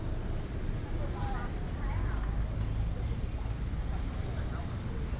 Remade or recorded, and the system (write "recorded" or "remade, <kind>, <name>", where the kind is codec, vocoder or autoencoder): recorded